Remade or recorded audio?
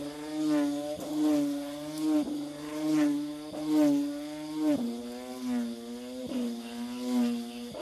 recorded